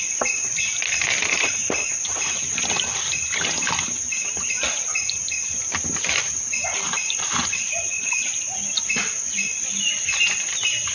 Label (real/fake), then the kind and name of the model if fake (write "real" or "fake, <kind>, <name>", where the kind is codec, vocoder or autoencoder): real